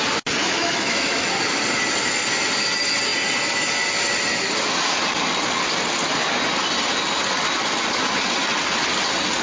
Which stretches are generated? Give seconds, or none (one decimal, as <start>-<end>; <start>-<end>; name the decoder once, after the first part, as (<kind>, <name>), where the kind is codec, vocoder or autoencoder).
0.4-1.3 (autoencoder, DAC-VAE)